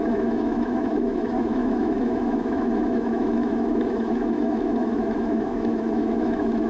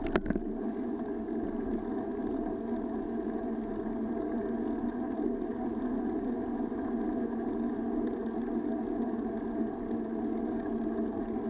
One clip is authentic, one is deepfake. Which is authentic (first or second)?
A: second